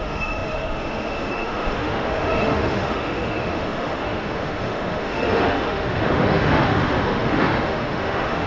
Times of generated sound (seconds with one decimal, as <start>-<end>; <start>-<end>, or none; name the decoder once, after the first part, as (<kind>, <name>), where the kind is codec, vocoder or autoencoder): 0.0-8.5 (autoencoder, DAC-VAE)